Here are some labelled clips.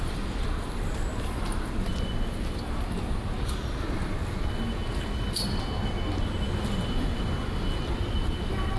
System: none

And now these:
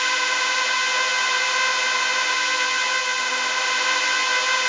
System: none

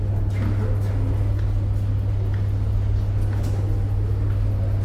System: none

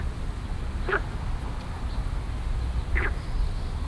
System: none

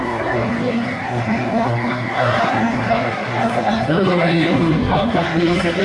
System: codec, SNAC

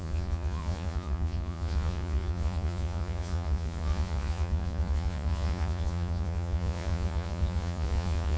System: vocoder, Vocos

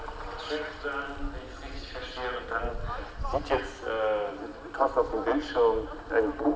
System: none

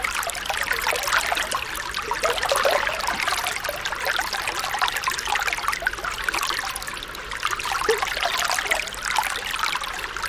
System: none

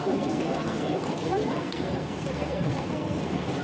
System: codec, SNAC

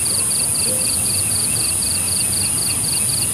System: none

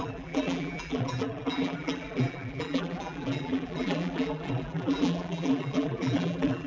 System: vocoder, BigVGAN v2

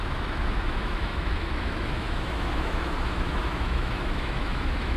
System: autoencoder, DAC-VAE